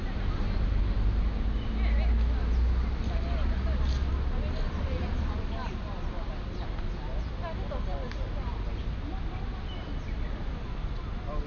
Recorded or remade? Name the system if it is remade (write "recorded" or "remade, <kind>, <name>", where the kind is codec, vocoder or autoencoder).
recorded